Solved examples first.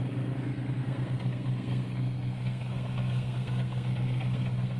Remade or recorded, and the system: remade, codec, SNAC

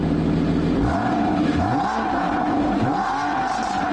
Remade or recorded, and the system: recorded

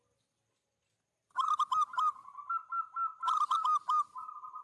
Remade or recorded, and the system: recorded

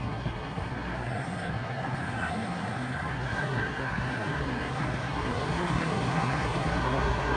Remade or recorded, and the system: remade, codec, SNAC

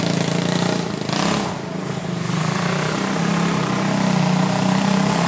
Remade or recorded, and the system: recorded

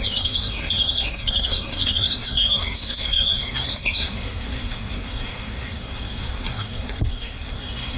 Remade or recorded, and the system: remade, codec, SNAC